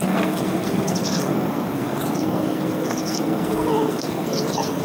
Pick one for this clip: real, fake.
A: fake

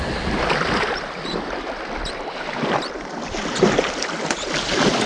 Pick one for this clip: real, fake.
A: real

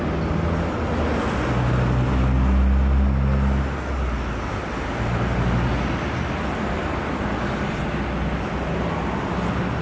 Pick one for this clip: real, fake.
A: real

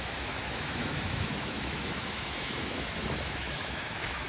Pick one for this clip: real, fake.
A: fake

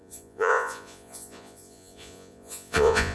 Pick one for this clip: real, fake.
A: fake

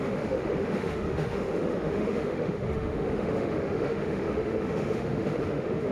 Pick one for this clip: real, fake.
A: fake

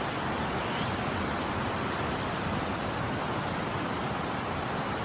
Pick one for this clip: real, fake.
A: real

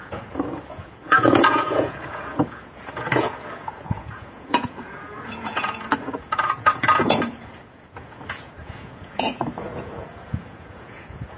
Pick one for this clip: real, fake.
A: fake